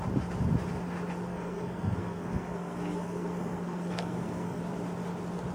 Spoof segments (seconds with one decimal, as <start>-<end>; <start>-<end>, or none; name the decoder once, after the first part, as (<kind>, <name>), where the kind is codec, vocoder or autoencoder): 1.3-4.6 (codec, SNAC)